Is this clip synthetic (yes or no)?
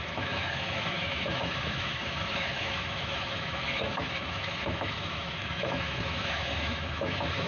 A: yes